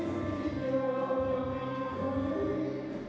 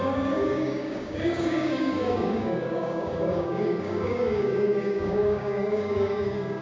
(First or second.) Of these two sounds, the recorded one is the first